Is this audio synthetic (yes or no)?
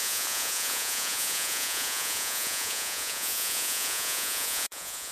yes